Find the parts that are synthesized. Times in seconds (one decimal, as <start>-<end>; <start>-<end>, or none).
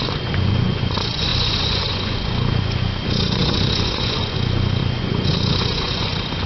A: 0.0-6.5